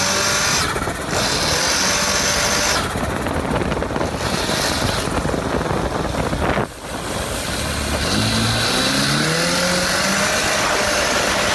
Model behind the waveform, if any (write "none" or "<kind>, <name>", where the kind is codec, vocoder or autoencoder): none